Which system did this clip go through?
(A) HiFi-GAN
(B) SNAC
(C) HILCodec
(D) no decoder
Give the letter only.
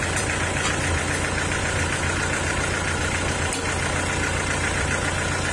D